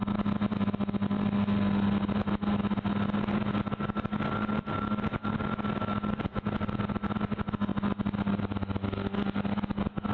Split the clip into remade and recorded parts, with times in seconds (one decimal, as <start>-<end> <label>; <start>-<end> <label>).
0.0-10.1 recorded